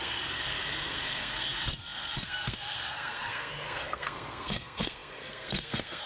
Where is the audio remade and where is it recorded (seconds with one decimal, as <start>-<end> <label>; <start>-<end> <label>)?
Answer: 0.0-6.1 remade